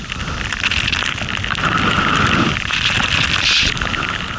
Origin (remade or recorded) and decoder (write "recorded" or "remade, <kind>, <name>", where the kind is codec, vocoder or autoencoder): recorded